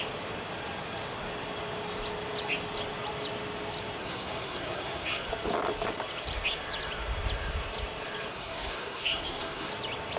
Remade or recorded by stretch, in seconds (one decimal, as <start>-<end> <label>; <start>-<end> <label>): 0.0-4.0 recorded; 4.0-5.3 remade; 5.3-8.3 recorded; 8.3-9.7 remade; 9.7-10.2 recorded